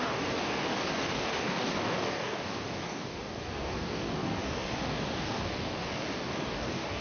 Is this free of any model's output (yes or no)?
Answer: no